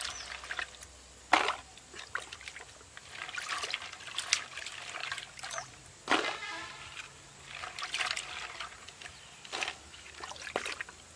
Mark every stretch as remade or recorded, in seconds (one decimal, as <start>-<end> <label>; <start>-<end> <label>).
0.0-11.2 recorded

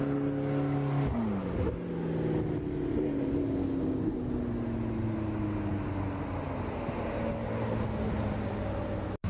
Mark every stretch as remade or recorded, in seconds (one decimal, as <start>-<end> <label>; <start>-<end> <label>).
0.0-3.6 recorded; 3.6-4.1 remade; 4.1-9.3 recorded

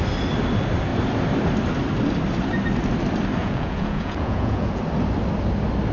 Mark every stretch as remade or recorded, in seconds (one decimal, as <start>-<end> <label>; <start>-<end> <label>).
0.0-3.4 recorded; 3.4-4.8 remade; 4.8-5.9 recorded

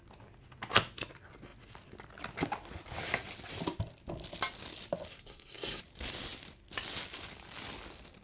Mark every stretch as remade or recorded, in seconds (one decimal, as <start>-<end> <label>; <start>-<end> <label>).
0.0-5.1 recorded; 5.1-5.8 remade; 5.8-8.2 recorded

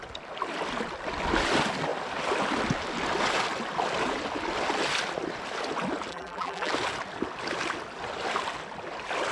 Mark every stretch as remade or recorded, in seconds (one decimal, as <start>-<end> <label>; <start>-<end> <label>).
0.0-6.1 recorded; 6.1-6.7 remade; 6.7-9.3 recorded

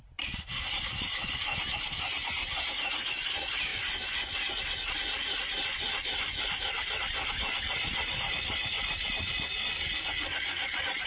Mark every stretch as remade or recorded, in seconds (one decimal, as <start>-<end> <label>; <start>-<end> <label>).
0.0-11.1 recorded